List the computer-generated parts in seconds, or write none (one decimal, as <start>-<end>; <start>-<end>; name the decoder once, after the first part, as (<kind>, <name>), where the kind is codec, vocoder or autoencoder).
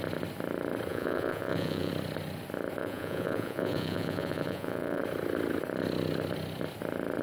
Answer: 0.9-1.9 (vocoder, Vocos); 2.8-5.0